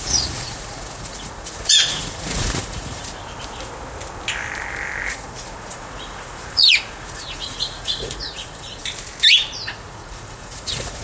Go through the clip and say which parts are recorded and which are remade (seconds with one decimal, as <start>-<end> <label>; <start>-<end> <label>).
0.0-3.2 remade; 3.2-5.1 recorded; 5.1-8.8 remade; 8.8-9.7 recorded; 9.7-11.0 remade